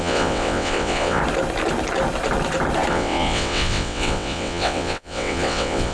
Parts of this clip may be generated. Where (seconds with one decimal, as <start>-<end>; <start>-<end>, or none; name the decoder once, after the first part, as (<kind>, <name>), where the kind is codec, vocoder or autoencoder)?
0.0-1.2 (vocoder, WaveNeXt); 2.9-5.9